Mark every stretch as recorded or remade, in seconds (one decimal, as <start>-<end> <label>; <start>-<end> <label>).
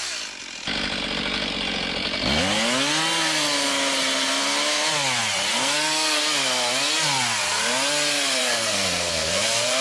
0.0-5.5 recorded; 5.5-6.2 remade; 6.2-8.4 recorded; 8.4-9.8 remade